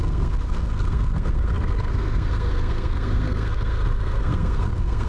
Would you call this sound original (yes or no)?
no